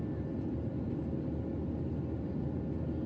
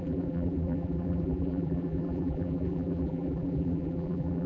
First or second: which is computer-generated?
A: second